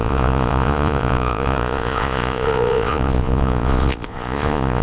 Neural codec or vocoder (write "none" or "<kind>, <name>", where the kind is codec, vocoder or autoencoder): vocoder, Vocos